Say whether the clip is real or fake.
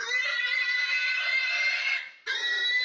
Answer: real